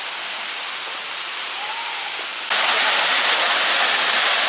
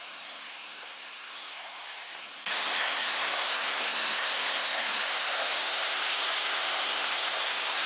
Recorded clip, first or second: first